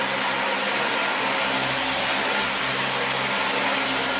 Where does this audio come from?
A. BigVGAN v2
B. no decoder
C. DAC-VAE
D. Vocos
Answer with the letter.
B